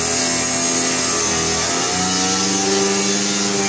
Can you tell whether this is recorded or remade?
recorded